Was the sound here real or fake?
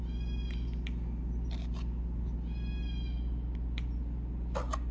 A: real